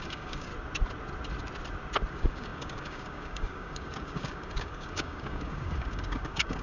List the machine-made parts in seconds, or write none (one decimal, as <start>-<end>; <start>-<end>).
0.0-0.5; 2.1-6.6